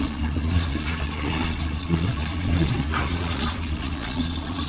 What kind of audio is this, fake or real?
fake